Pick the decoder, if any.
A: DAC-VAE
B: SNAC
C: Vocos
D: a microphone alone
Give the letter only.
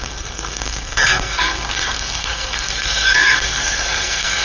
B